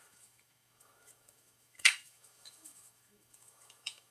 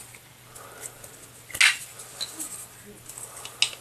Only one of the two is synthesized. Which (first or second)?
first